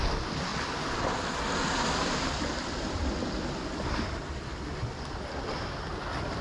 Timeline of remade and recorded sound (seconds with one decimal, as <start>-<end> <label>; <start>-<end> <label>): 0.0-0.5 recorded; 0.5-3.3 remade; 3.3-6.4 recorded